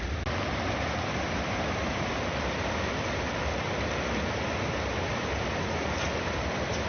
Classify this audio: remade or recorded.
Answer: recorded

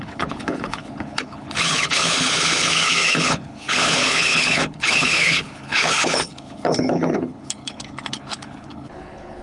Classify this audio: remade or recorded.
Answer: remade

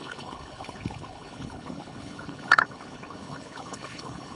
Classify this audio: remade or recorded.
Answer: remade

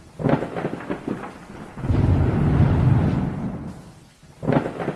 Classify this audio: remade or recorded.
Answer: recorded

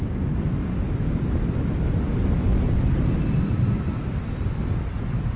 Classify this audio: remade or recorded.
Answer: recorded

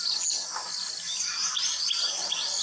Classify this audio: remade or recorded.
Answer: recorded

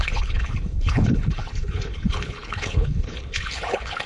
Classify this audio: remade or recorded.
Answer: remade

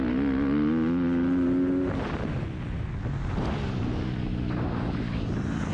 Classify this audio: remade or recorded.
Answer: recorded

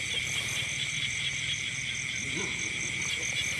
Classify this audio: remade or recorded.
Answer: recorded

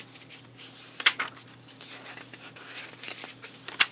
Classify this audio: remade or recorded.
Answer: recorded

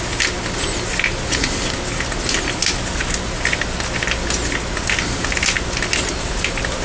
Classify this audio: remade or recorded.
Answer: recorded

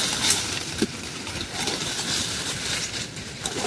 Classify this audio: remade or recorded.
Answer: recorded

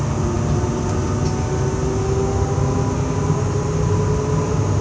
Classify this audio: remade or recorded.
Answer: recorded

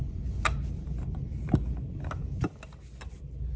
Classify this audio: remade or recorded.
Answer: recorded